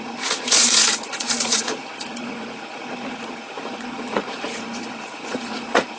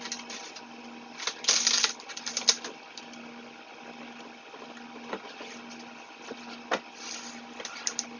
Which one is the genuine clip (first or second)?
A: second